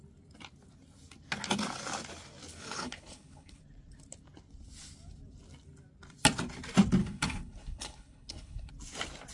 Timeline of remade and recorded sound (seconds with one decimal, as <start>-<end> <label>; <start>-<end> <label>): 0.0-2.5 recorded; 2.5-3.6 remade; 3.6-7.0 recorded; 7.0-8.7 remade; 8.7-9.3 recorded